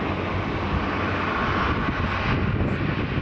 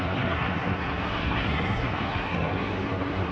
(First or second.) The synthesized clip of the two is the second